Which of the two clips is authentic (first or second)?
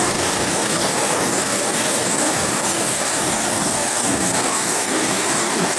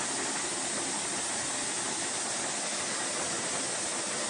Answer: second